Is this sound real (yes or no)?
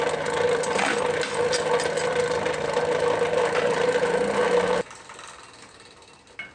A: yes